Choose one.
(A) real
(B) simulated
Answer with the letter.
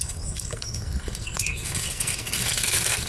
B